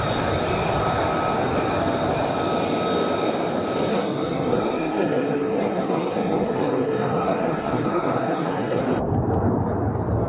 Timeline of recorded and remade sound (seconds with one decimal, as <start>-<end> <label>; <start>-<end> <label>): 0.0-3.9 recorded; 3.9-8.8 remade; 8.8-10.3 recorded